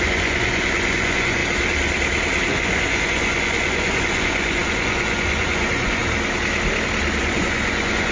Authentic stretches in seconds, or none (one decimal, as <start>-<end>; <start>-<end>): 1.4-2.5; 6.0-7.2